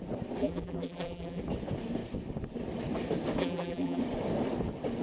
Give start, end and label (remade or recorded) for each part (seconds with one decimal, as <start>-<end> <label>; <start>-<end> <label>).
0.0-0.4 recorded; 0.4-1.4 remade; 1.4-3.4 recorded; 3.4-4.0 remade; 4.0-5.0 recorded